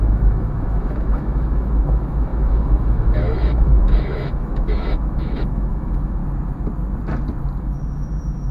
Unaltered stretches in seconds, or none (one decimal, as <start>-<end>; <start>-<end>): 6.2-7.6